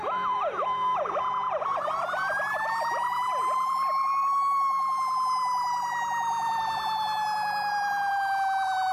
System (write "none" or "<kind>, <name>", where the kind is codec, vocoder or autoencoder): vocoder, BigVGAN v2